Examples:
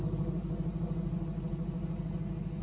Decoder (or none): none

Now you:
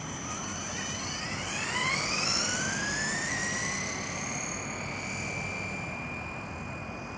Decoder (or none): none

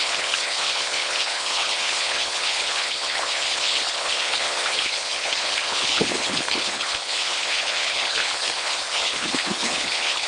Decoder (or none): codec, HILCodec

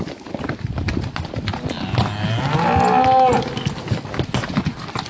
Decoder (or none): none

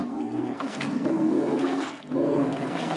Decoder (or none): codec, SNAC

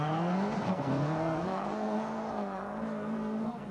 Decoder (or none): codec, SNAC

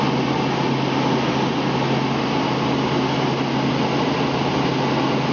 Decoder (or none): none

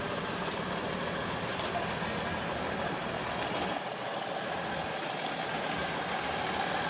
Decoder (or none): none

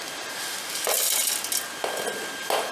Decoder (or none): none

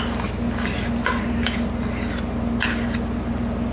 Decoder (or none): none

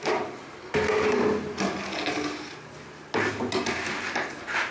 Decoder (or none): none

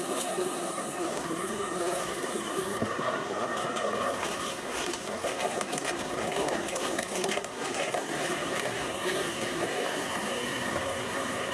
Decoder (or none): codec, SNAC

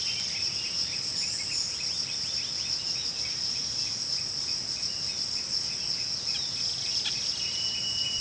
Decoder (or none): none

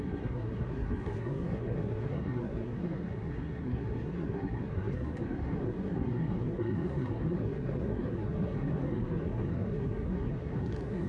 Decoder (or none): codec, SNAC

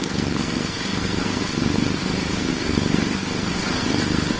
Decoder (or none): codec, SNAC